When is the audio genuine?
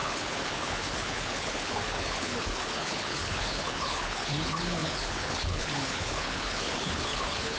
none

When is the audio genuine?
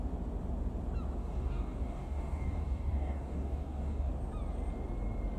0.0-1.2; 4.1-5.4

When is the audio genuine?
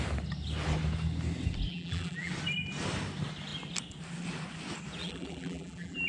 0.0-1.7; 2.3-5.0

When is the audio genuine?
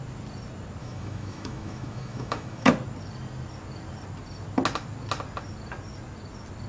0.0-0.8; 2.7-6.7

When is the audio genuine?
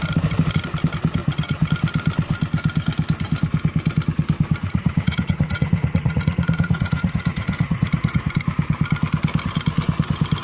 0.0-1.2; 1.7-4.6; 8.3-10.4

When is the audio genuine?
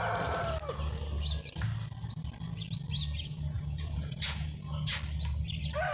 0.0-3.2; 4.9-5.9